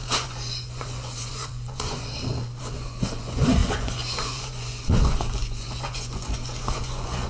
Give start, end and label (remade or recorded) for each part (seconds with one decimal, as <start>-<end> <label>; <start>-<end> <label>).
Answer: 0.0-2.1 remade; 2.1-2.6 recorded; 2.6-7.3 remade